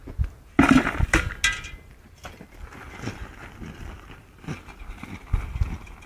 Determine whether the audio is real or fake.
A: real